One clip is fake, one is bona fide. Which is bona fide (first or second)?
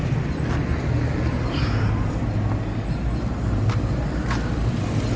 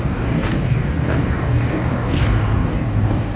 first